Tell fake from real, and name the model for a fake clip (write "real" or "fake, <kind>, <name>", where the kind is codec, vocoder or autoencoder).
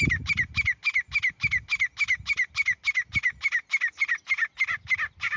real